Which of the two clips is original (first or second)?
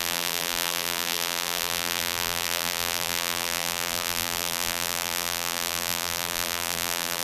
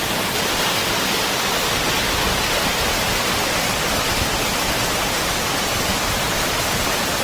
second